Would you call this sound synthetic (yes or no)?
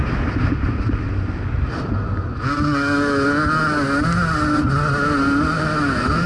no